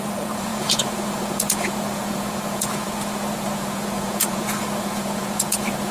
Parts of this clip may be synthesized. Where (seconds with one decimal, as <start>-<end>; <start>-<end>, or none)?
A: 0.0-5.9